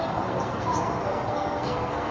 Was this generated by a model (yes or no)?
yes